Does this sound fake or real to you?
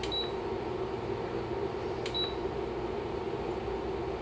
real